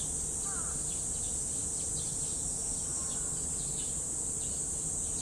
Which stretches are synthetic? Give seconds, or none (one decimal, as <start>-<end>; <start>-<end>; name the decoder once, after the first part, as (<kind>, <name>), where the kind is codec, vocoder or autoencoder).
none